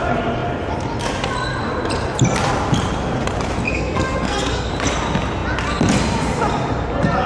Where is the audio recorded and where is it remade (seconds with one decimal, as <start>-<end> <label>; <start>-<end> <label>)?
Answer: 0.0-3.7 recorded; 3.7-4.7 remade; 4.7-7.3 recorded